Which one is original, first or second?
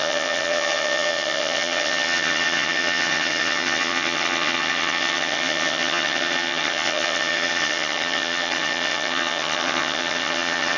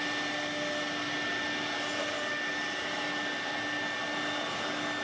second